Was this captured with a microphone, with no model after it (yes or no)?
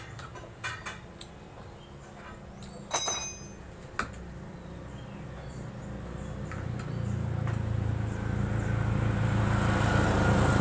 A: yes